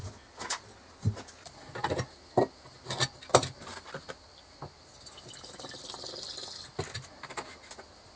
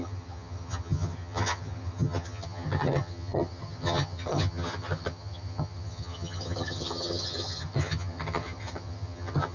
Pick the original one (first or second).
first